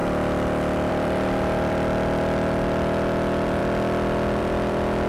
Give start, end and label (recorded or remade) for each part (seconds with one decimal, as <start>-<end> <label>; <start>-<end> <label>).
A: 0.0-0.9 recorded; 0.9-3.6 remade; 3.6-4.4 recorded; 4.4-5.1 remade